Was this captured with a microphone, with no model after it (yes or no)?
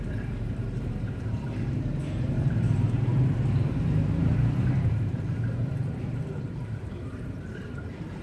no